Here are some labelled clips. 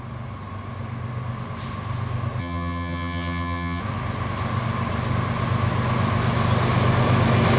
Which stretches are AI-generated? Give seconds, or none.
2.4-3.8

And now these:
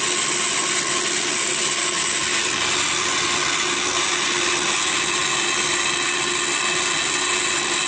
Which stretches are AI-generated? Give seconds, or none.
none

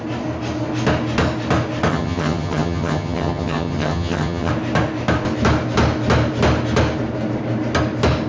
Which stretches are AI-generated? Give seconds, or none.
1.9-4.5